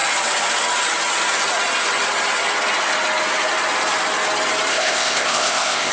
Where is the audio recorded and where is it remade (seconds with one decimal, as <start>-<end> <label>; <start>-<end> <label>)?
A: 0.0-4.7 recorded; 4.7-5.9 remade